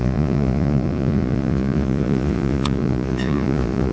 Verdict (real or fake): fake